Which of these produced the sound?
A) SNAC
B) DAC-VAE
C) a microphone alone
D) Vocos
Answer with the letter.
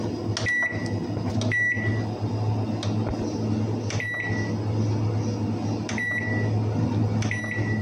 C